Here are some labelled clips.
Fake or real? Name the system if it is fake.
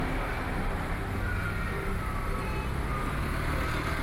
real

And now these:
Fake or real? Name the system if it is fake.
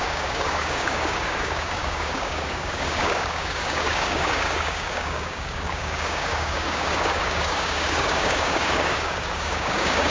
fake, codec, DAC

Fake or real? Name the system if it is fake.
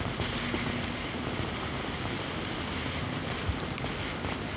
real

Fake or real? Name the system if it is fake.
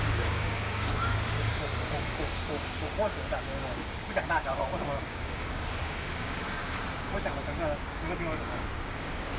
fake, codec, DAC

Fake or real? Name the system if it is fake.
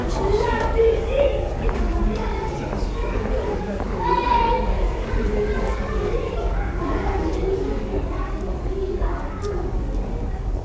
fake, codec, DAC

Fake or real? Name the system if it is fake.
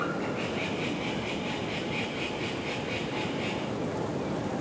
real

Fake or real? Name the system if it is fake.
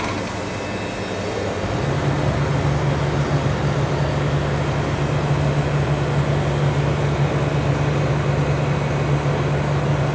real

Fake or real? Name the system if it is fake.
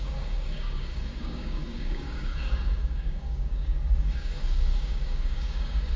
fake, codec, DAC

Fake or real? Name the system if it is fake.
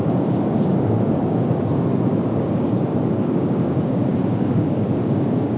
fake, codec, DAC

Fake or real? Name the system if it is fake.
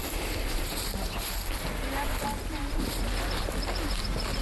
real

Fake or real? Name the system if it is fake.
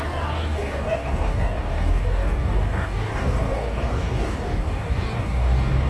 fake, codec, DAC